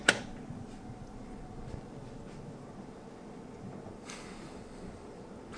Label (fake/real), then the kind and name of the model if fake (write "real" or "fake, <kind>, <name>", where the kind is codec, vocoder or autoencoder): real